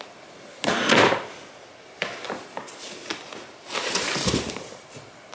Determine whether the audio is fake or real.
real